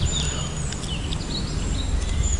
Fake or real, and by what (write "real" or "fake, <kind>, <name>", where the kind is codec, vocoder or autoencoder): real